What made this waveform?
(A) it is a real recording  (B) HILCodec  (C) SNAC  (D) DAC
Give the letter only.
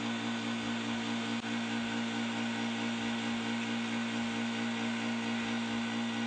A